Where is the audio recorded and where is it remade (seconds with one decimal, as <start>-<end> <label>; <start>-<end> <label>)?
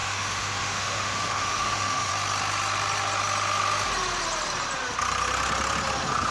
0.0-2.1 remade; 2.1-6.3 recorded